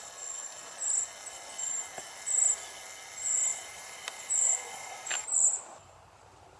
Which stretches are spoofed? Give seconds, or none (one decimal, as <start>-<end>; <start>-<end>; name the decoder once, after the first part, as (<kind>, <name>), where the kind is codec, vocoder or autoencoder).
3.5-5.6 (vocoder, BigVGAN v2)